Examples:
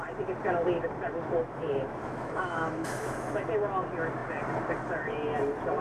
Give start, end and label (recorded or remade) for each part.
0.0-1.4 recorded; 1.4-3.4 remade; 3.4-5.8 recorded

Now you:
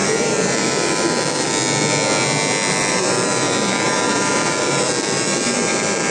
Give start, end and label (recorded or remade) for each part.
0.0-1.5 remade; 1.5-2.9 recorded; 2.9-6.1 remade

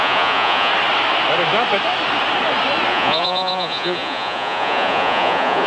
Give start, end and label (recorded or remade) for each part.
0.0-0.7 remade; 0.7-2.9 recorded; 2.9-5.7 remade